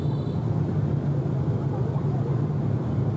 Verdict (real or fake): real